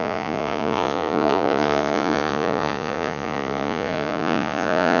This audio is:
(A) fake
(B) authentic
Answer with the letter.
A